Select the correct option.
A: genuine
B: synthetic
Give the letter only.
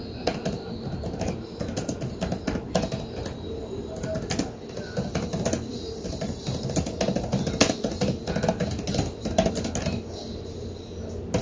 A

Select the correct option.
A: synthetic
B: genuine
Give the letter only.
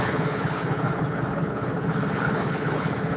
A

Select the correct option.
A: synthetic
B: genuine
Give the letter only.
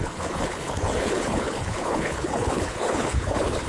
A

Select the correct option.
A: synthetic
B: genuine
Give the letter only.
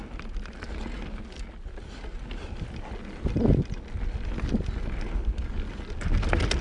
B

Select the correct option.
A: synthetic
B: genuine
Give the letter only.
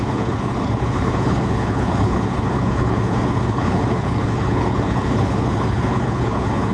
A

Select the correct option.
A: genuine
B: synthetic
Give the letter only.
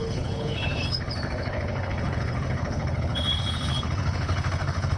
B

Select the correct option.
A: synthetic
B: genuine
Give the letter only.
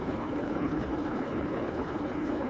A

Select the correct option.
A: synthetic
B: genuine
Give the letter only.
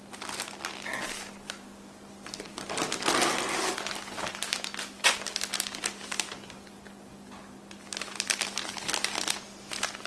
B